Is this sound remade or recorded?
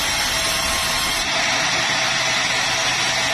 recorded